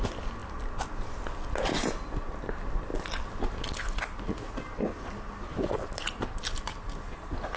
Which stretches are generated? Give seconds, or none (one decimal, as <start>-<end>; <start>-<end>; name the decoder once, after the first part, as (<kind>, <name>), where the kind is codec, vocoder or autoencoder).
none

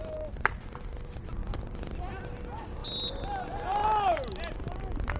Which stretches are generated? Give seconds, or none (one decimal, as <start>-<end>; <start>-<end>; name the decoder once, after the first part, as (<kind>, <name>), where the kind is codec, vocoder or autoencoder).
none

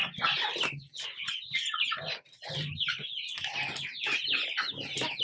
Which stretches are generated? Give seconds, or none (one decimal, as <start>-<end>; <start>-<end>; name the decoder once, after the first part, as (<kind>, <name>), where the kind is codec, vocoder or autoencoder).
none

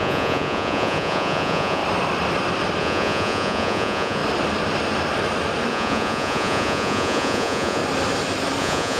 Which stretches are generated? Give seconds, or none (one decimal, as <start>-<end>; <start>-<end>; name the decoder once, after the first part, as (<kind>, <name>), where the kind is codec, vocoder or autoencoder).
0.0-1.8 (vocoder, Vocos); 2.8-4.2; 5.7-7.8; 8.6-9.0

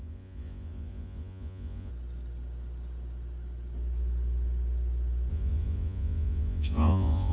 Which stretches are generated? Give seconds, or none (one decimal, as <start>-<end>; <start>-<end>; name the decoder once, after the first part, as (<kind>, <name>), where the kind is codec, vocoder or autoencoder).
0.0-1.9 (vocoder, Vocos); 5.3-7.3